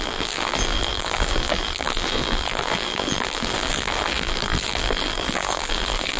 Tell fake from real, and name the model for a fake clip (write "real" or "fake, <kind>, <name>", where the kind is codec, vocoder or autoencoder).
fake, vocoder, BigVGAN v2